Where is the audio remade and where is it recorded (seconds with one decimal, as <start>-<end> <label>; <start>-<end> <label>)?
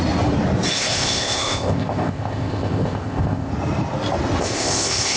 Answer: 0.0-0.7 recorded; 0.7-3.5 remade; 3.5-4.4 recorded; 4.4-5.2 remade